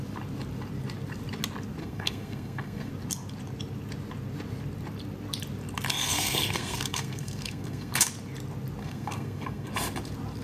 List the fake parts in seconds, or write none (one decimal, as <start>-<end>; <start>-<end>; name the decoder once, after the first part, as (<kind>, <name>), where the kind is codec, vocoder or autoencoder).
1.8-2.9 (codec, SNAC); 6.0-8.1; 8.8-9.7